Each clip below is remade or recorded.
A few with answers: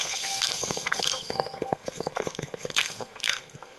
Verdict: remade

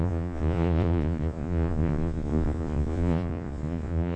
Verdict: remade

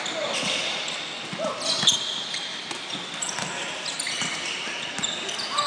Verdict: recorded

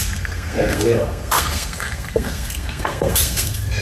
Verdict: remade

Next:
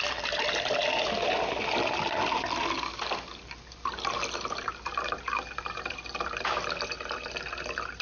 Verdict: recorded